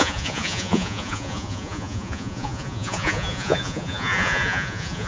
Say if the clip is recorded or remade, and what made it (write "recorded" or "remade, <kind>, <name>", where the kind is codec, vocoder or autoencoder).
remade, vocoder, Vocos